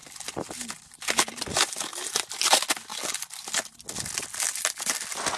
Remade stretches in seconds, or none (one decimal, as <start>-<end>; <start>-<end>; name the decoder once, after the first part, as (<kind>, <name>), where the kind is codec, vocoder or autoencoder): none